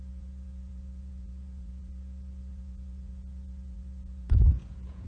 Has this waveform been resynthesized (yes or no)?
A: yes